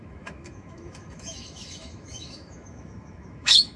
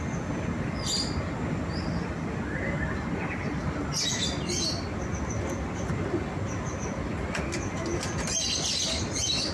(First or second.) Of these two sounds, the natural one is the second